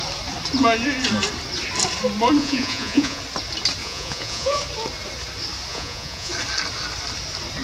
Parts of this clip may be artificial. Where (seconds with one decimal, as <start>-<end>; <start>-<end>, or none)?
2.4-3.2; 3.8-4.6; 5.7-6.3